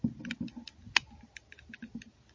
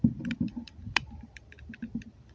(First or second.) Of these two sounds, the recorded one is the first